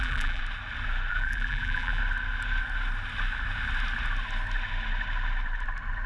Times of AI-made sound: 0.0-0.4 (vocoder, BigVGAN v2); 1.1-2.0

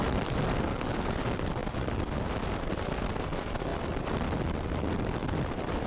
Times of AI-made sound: 3.7-4.3 (vocoder, BigVGAN v2); 5.2-5.9

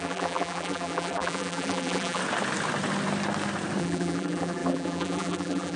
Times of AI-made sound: 0.0-2.2 (vocoder, BigVGAN v2); 3.8-5.8

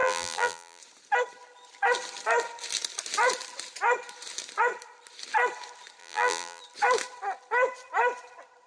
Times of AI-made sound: 0.0-0.8 (vocoder, BigVGAN v2); 6.0-6.6

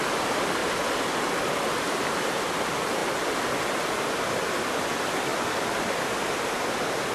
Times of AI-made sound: 0.0-0.6 (vocoder, BigVGAN v2); 1.1-3.0; 3.7-5.3; 5.8-7.1

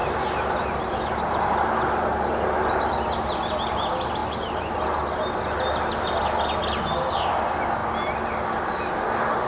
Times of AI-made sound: 0.0-2.3 (vocoder, BigVGAN v2); 4.2-4.8

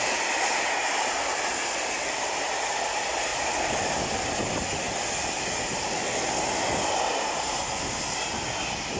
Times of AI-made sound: 3.3-4.0 (vocoder, BigVGAN v2)